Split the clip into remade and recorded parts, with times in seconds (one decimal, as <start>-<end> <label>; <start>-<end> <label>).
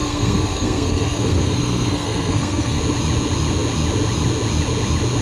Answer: 0.0-2.8 remade; 2.8-5.2 recorded